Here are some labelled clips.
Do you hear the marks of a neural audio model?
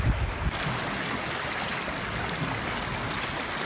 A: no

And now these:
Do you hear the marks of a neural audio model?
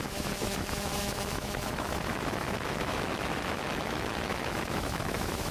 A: yes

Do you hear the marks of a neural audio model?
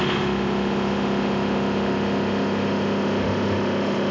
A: yes